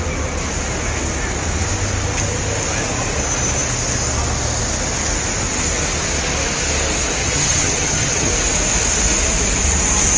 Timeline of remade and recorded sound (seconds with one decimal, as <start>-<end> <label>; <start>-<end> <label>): 0.0-7.2 recorded; 7.2-8.3 remade; 8.3-10.2 recorded